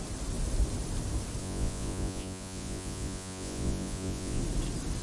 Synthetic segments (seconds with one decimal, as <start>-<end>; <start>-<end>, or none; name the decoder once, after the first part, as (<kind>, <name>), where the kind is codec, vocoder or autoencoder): 1.4-4.4 (vocoder, Vocos)